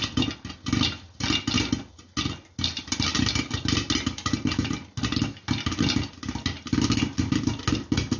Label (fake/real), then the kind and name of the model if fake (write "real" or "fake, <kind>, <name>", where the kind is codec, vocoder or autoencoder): real